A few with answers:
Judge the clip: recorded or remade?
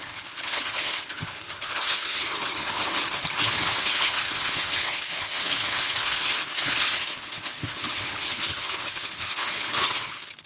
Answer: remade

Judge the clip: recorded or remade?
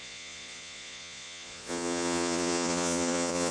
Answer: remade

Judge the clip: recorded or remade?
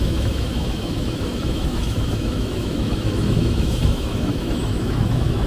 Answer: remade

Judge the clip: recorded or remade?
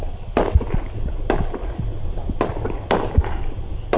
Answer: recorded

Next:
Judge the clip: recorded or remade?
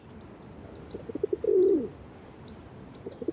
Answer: recorded